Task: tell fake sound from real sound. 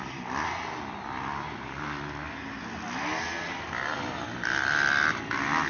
real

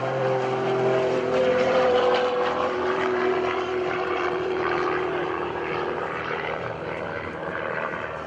fake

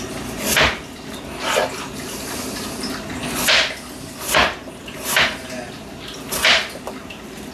real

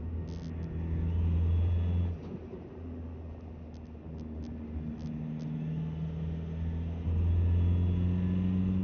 real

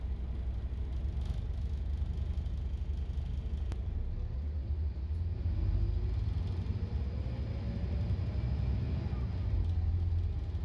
real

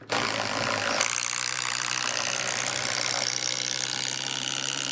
real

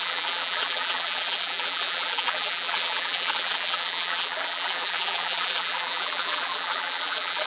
fake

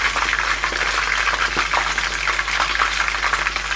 real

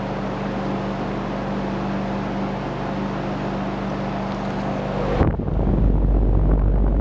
real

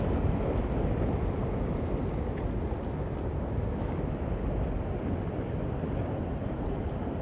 real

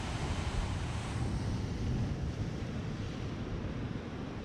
fake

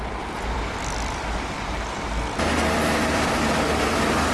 fake